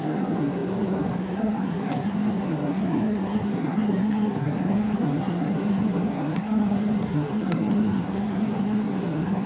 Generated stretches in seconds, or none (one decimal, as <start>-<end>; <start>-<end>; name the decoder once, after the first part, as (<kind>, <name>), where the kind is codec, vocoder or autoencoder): 0.0-9.5 (codec, SNAC)